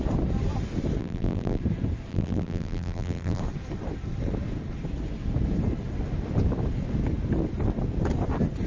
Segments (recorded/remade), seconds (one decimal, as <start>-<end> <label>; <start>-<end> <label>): 0.0-1.0 recorded; 1.0-1.6 remade; 1.6-2.1 recorded; 2.1-3.4 remade; 3.4-8.7 recorded